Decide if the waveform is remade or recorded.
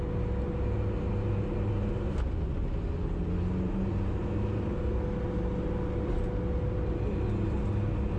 recorded